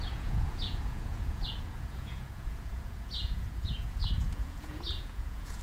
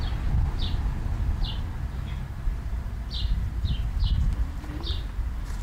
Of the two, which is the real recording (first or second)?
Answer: second